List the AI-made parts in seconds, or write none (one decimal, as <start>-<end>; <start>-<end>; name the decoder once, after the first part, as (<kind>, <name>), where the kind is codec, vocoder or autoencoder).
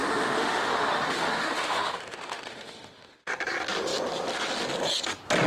0.0-3.3 (autoencoder, DAC-VAE)